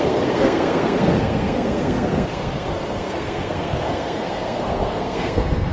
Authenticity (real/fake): fake